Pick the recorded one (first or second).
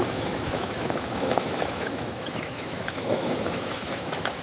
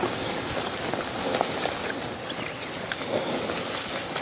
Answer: second